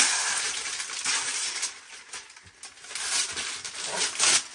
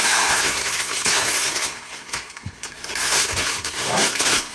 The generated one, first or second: second